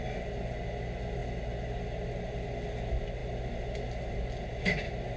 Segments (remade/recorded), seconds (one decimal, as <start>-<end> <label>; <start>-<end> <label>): 0.0-5.2 recorded